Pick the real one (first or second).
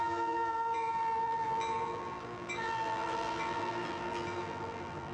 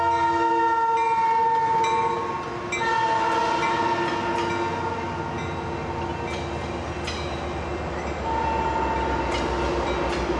second